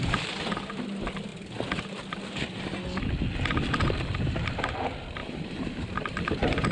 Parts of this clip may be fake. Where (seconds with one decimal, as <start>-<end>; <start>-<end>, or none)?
5.2-6.3